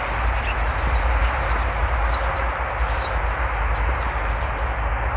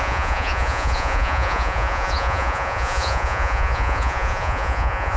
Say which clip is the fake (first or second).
second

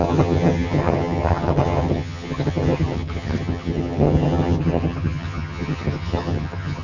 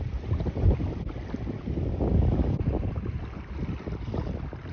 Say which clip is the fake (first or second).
first